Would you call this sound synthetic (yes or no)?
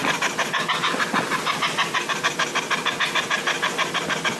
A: no